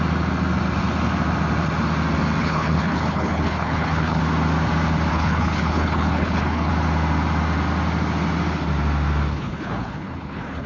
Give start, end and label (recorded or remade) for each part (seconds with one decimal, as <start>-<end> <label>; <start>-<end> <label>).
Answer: 0.0-2.4 recorded; 2.4-4.2 remade; 4.2-5.1 recorded; 5.1-6.7 remade; 6.7-9.3 recorded; 9.3-10.7 remade